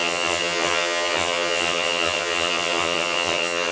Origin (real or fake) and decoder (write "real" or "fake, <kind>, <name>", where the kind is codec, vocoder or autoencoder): fake, vocoder, HiFi-GAN